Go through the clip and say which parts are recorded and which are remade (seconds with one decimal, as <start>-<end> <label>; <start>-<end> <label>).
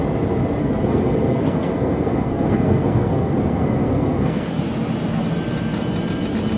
0.0-0.6 recorded; 0.6-4.6 remade; 4.6-6.6 recorded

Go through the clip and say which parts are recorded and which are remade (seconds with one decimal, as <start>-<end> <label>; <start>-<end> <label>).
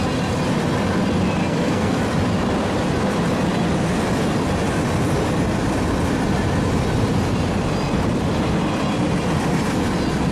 0.0-1.4 recorded; 1.4-2.0 remade; 2.0-10.3 recorded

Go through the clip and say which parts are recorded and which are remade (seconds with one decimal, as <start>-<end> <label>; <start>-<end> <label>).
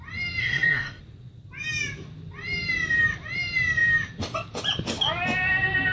0.0-0.4 recorded; 0.4-1.0 remade; 1.0-5.9 recorded